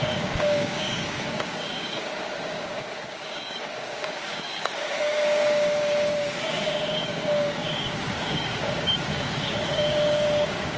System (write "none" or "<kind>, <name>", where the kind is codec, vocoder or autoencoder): codec, DAC